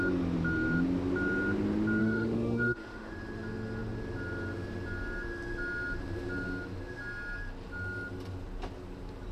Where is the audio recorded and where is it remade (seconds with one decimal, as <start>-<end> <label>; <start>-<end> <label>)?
0.0-2.0 recorded; 2.0-3.1 remade; 3.1-9.3 recorded